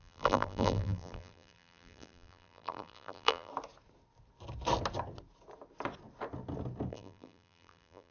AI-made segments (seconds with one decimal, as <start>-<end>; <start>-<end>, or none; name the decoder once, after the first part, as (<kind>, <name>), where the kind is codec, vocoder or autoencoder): 0.0-3.5 (vocoder, BigVGAN v2); 6.9-8.1